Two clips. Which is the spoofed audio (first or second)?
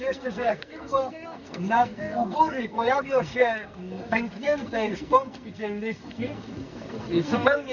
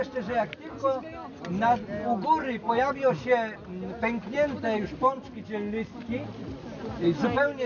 first